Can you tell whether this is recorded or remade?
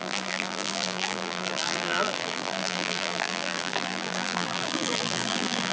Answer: remade